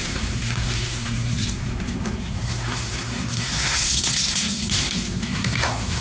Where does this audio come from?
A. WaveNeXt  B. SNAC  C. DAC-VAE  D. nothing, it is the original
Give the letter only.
B